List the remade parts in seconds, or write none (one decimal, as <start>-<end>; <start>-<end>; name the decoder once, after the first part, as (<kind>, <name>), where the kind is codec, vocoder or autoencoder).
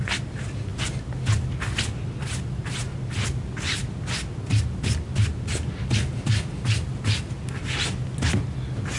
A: none